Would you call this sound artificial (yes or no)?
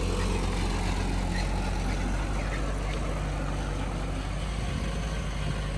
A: no